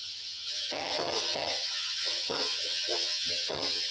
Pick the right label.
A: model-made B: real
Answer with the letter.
A